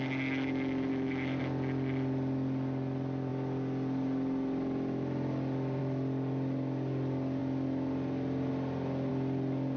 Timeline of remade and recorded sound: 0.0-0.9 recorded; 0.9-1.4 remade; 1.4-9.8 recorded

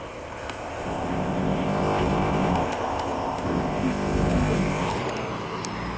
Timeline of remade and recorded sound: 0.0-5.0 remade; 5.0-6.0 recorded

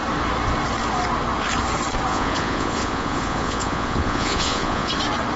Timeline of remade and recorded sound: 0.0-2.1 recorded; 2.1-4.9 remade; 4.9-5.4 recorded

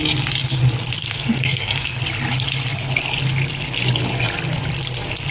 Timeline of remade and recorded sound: 0.0-1.0 recorded; 1.0-2.0 remade; 2.0-5.3 recorded

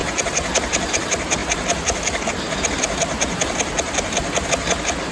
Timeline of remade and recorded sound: 0.0-5.1 recorded

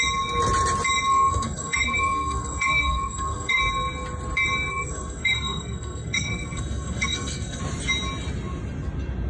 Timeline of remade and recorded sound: 0.0-1.1 recorded; 1.1-3.6 remade; 3.6-4.7 recorded; 4.7-7.6 remade; 7.6-9.3 recorded